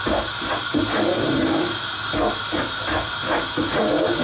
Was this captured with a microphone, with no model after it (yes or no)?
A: yes